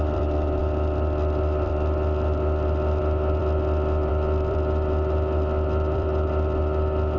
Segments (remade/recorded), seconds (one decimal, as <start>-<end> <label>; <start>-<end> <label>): 0.0-3.4 remade; 3.4-4.1 recorded; 4.1-7.2 remade